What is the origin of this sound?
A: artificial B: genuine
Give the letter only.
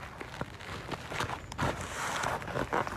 B